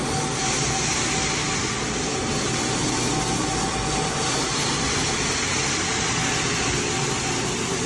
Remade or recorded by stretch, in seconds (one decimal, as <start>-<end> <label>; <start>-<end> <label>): 0.0-7.9 recorded